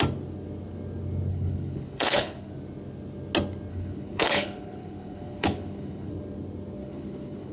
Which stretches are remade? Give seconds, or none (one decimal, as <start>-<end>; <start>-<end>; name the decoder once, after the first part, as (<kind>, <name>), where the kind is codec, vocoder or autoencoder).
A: 1.3-2.5 (codec, HILCodec); 3.7-6.1; 6.8-7.5